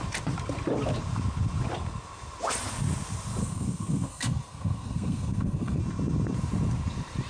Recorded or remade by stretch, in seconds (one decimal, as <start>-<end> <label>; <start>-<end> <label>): 0.0-3.4 recorded; 3.4-5.8 remade; 5.8-7.3 recorded

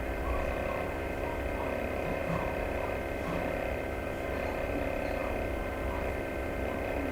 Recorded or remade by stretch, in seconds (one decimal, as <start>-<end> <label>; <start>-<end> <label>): 0.0-7.1 remade

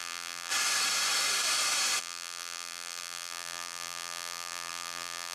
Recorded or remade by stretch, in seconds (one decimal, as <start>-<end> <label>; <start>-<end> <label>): 0.0-0.5 remade; 0.5-2.0 recorded; 2.0-5.3 remade

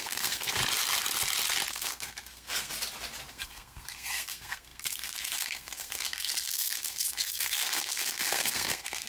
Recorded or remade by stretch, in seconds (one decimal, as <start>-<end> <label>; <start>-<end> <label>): 0.0-0.6 remade; 0.6-1.7 recorded; 1.7-2.7 remade; 2.7-3.3 recorded; 3.3-9.1 remade

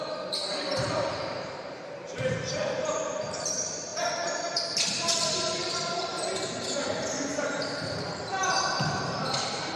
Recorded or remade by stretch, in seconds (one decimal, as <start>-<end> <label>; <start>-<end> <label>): 0.0-3.9 remade; 3.9-4.4 recorded; 4.4-9.8 remade

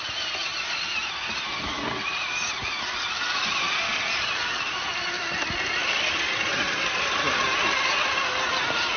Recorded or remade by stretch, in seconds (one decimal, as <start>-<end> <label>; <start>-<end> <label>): 0.0-9.0 recorded